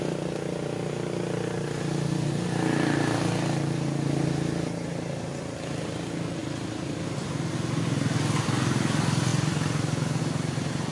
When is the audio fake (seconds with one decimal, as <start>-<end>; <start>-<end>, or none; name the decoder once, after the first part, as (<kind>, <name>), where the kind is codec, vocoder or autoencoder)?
none